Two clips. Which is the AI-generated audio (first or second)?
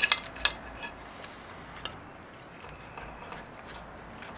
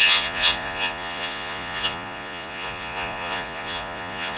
second